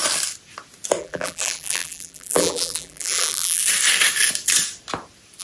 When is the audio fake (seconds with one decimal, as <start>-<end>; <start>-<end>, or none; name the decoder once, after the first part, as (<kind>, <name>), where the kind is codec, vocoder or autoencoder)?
1.0-3.6 (vocoder, BigVGAN v2)